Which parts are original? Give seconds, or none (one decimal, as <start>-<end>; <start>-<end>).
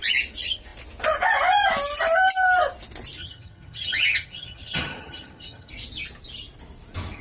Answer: 0.0-3.2; 5.7-7.2